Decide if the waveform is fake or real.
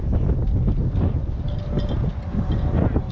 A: real